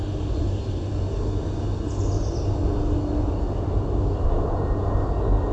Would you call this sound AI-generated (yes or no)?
no